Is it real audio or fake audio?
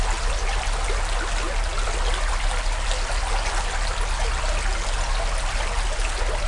real